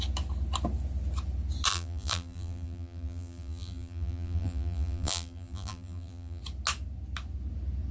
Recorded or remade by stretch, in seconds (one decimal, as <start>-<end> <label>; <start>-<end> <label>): 0.0-1.7 recorded; 1.7-6.4 remade; 6.4-7.9 recorded